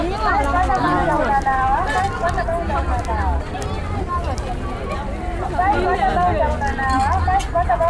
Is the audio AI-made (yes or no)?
no